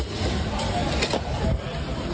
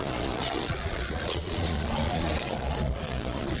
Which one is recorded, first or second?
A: first